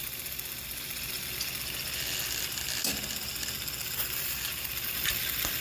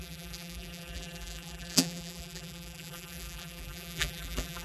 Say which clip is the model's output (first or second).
second